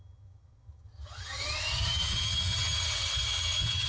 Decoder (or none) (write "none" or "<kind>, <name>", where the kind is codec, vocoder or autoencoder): vocoder, HiFi-GAN